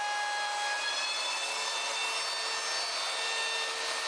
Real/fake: real